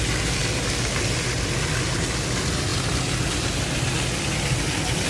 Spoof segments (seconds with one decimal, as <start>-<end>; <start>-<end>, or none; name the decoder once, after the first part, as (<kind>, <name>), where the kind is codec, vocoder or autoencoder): none